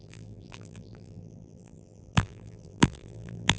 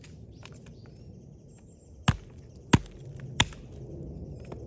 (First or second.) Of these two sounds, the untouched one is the second